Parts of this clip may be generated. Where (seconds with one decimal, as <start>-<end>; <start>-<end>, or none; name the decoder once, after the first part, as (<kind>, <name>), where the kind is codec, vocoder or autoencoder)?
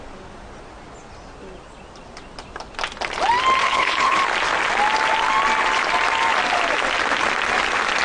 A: 3.6-4.2 (codec, HILCodec)